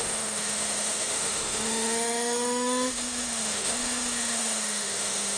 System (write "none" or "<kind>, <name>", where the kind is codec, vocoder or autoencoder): autoencoder, DAC-VAE